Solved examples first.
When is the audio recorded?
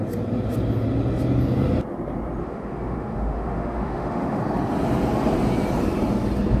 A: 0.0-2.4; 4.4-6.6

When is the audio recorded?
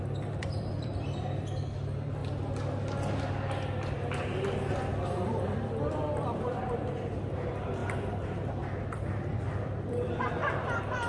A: 2.2-4.7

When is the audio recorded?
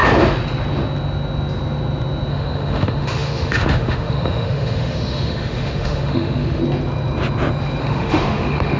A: 0.0-2.3; 6.6-7.8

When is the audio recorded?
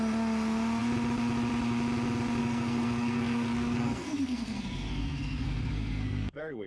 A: 0.0-2.4